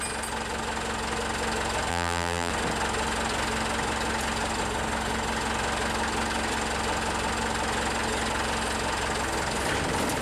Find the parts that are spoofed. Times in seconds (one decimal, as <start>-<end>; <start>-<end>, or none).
1.9-2.5